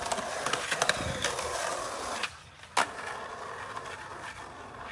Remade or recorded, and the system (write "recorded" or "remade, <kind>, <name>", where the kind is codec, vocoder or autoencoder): recorded